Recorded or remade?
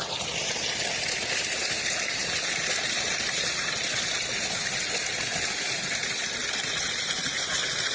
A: recorded